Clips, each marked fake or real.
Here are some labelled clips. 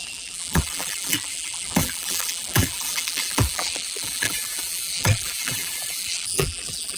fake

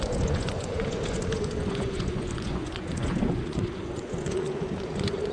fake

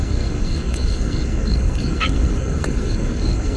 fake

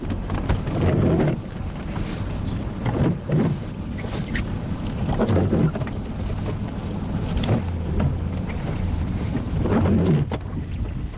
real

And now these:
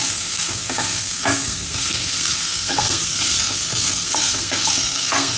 fake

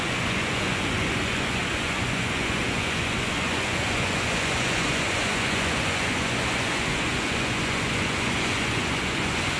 fake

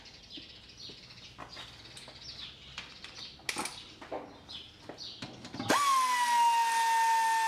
real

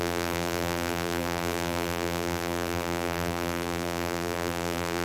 fake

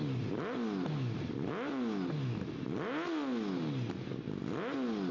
real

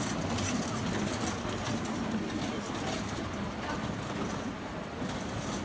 real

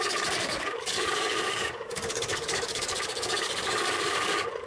fake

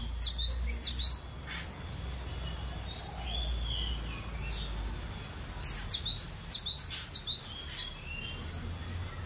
real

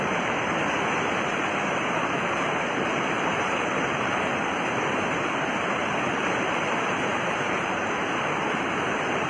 fake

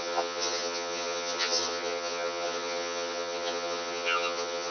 fake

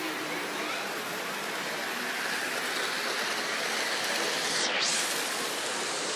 real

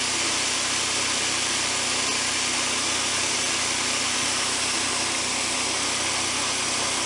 real